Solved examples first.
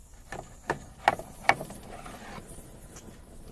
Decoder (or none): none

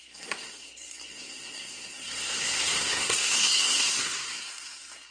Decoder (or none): codec, SNAC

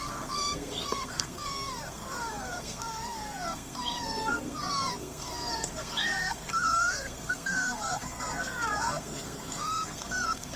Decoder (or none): codec, SNAC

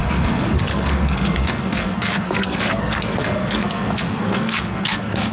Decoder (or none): codec, SNAC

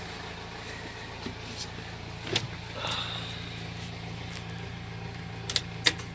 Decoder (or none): none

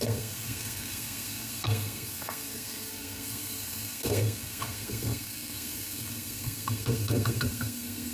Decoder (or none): codec, SNAC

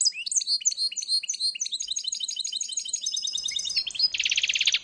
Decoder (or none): none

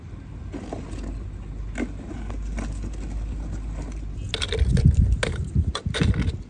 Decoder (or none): none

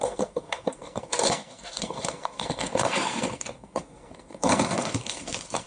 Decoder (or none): codec, SNAC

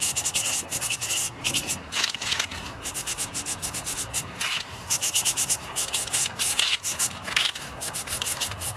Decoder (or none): codec, SNAC